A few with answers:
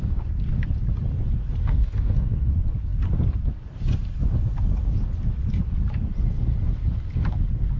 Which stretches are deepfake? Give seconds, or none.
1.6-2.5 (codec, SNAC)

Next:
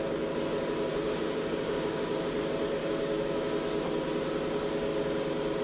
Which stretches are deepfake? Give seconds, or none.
0.9-2.3 (codec, DAC); 2.8-3.4